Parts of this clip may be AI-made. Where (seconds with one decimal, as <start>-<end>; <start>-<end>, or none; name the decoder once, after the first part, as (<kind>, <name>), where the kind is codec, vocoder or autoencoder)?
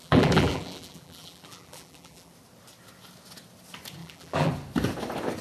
0.0-2.3 (vocoder, BigVGAN v2); 4.0-4.5